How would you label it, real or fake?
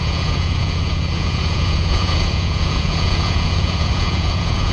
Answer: fake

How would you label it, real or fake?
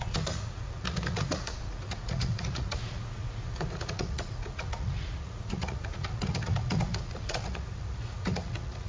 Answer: fake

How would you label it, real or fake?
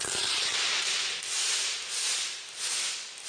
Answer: real